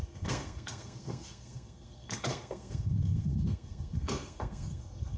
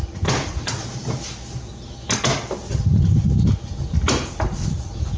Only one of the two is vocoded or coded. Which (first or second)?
first